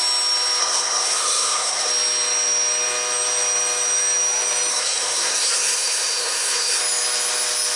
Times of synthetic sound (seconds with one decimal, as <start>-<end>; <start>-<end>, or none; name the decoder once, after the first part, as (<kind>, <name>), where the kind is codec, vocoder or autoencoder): 0.6-1.9 (codec, SNAC); 4.7-6.8